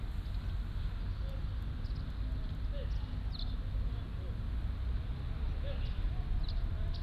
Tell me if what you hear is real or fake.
real